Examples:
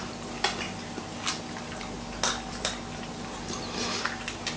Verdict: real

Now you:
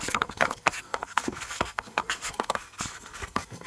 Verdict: fake